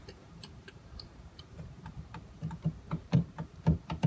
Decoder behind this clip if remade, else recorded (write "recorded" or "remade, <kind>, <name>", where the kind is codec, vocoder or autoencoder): remade, vocoder, BigVGAN v2